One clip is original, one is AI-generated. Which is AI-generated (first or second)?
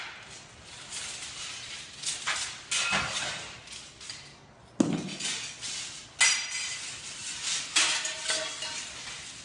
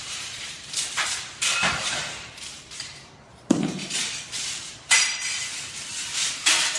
second